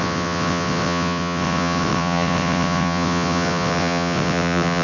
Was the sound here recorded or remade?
remade